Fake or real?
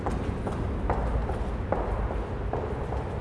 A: real